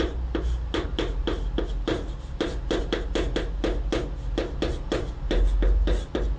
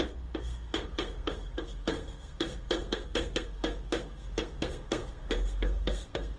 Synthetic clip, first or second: second